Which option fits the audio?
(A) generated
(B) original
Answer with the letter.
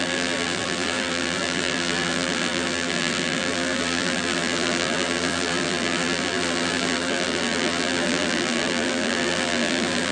A